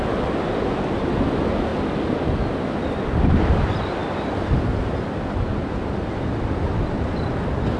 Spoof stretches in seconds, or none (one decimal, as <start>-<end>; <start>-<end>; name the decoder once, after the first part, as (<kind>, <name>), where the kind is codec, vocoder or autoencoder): none